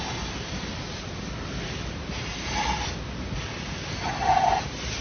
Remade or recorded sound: recorded